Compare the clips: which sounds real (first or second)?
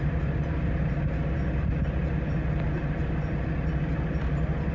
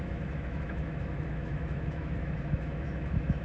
first